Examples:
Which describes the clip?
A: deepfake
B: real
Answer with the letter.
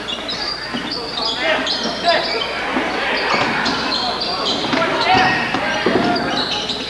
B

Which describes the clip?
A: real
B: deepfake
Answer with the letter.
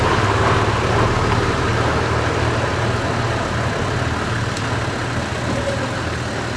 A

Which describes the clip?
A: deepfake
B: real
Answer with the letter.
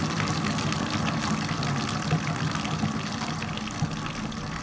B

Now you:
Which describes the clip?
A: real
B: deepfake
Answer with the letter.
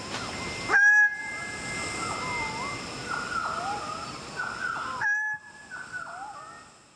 A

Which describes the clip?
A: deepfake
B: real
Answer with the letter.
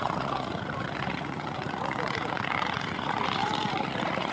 A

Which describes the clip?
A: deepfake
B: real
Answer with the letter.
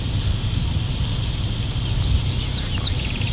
B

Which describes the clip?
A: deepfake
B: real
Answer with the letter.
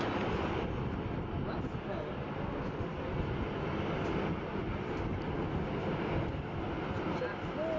B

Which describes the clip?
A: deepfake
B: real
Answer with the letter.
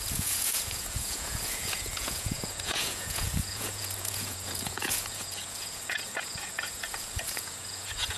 A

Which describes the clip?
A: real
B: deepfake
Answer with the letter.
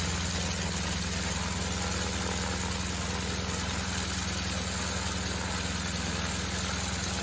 A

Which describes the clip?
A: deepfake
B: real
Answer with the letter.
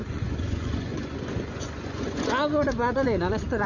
A